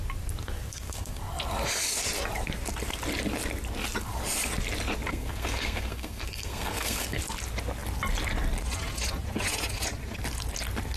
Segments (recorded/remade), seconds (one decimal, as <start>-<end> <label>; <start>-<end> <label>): 0.0-0.7 recorded; 0.7-1.2 remade; 1.2-5.1 recorded; 5.1-7.2 remade; 7.2-11.0 recorded